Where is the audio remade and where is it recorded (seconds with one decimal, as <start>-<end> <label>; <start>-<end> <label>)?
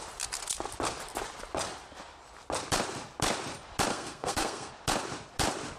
0.0-3.9 recorded; 3.9-4.7 remade; 4.7-5.8 recorded